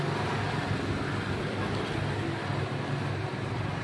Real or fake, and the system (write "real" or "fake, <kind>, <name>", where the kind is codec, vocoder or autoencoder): real